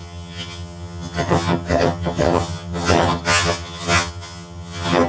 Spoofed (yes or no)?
yes